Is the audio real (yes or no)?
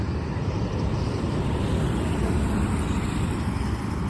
no